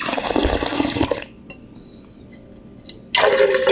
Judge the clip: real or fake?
real